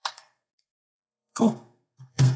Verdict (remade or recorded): remade